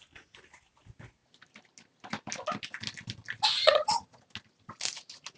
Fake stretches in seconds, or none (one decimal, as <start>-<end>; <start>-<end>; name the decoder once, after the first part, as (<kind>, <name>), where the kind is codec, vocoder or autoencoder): 3.6-4.2 (vocoder, HiFi-GAN)

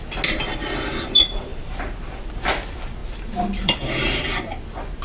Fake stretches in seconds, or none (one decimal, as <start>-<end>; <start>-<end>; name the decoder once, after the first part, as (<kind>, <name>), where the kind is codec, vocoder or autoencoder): 1.5-2.5 (vocoder, BigVGAN v2); 3.0-3.9

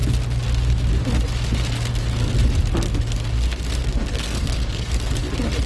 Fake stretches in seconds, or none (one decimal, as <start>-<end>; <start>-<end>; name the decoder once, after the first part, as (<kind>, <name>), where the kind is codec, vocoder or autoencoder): 3.8-5.0 (codec, SNAC)

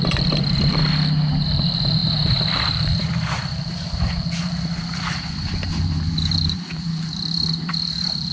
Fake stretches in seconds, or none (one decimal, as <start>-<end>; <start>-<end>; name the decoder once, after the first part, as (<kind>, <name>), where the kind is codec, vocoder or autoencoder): 0.0-0.8 (vocoder, BigVGAN v2); 1.6-8.3

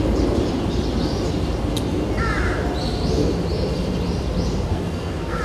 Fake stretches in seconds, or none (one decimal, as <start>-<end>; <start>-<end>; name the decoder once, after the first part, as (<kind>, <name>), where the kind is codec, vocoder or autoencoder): 4.7-5.4 (codec, SNAC)

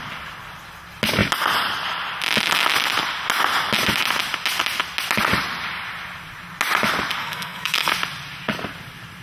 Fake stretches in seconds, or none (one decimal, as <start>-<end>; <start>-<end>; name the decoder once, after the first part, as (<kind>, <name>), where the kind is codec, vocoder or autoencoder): 7.2-7.9 (codec, SNAC)